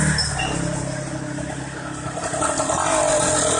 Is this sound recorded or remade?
recorded